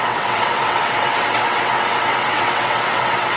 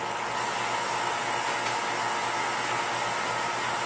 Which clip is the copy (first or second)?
first